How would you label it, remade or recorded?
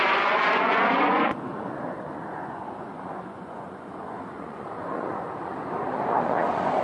remade